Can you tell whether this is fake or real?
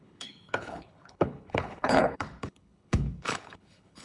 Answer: fake